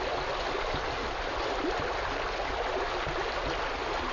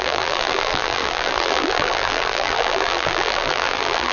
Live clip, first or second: first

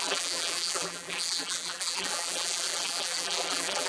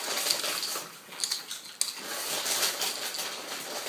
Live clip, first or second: second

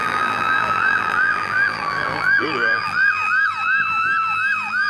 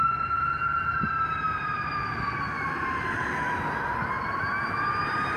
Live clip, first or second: second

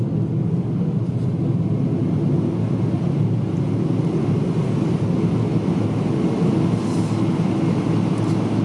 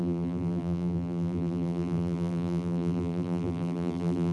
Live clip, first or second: first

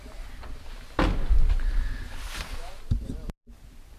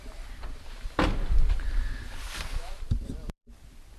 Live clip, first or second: first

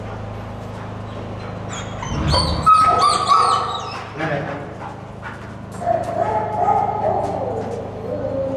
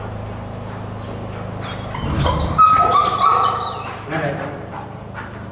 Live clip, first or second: first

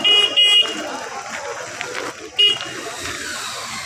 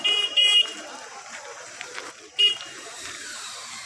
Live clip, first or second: first